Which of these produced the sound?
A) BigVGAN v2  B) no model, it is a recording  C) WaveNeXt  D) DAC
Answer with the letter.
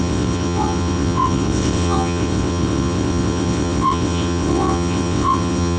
C